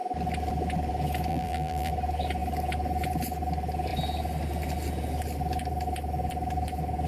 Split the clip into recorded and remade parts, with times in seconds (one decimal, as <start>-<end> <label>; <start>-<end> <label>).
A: 0.0-1.3 recorded; 1.3-1.9 remade; 1.9-7.1 recorded